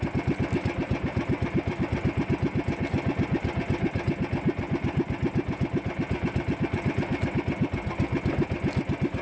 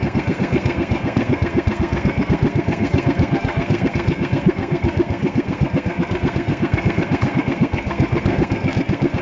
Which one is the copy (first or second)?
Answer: second